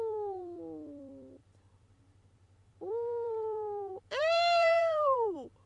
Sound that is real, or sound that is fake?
fake